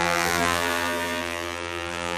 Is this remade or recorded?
remade